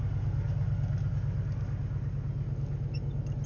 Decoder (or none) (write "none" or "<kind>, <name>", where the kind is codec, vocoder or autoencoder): none